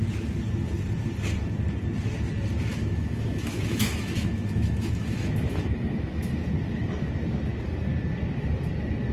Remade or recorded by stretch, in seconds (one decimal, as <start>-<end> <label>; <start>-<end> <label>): 0.0-2.7 recorded; 2.7-6.4 remade; 6.4-9.1 recorded